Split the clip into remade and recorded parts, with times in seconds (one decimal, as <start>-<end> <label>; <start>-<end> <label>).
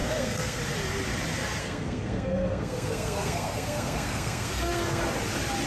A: 0.0-0.6 remade; 0.6-1.6 recorded; 1.6-5.0 remade; 5.0-5.7 recorded